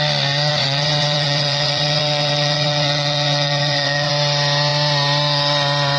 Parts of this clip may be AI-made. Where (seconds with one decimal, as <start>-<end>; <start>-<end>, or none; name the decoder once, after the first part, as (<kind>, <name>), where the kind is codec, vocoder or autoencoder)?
0.5-4.1 (vocoder, WaveNeXt)